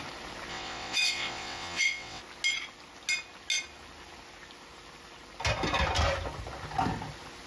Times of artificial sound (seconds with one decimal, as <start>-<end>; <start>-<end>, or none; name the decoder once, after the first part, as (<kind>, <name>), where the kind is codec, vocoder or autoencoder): 0.5-2.2 (vocoder, WaveNeXt)